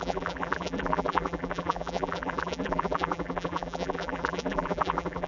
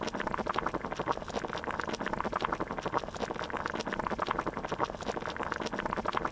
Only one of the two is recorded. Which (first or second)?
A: second